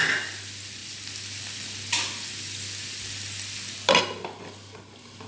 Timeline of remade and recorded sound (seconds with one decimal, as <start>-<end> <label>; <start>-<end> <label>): 0.0-5.3 recorded